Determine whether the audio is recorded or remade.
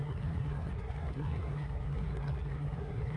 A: remade